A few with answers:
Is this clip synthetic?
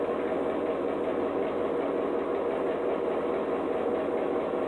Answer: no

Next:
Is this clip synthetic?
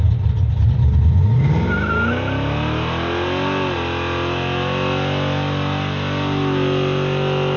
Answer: no